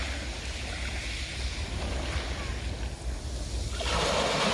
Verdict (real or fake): real